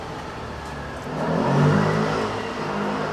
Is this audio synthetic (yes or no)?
no